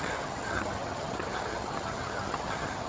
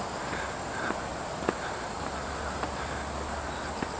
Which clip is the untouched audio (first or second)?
second